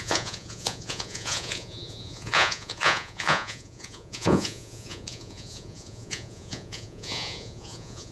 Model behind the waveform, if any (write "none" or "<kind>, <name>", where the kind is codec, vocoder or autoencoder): vocoder, Vocos